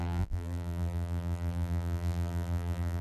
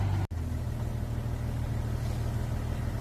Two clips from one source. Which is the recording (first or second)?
second